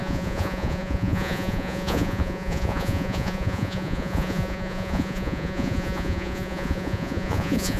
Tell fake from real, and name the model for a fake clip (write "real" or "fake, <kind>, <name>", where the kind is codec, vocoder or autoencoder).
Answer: fake, vocoder, Vocos